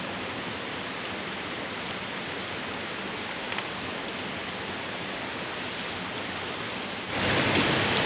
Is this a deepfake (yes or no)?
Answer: no